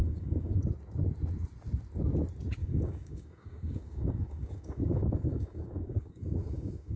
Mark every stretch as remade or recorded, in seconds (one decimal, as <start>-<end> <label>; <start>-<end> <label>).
0.0-0.6 remade; 0.6-2.6 recorded; 2.6-7.0 remade